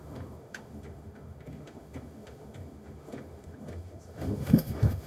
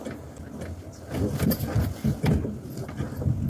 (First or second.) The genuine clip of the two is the second